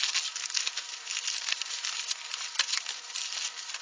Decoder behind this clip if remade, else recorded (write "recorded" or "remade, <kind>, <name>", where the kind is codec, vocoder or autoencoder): recorded